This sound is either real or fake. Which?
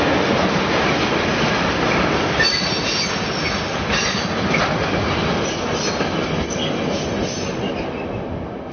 real